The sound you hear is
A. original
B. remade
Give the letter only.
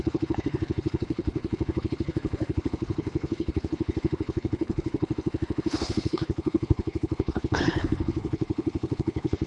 B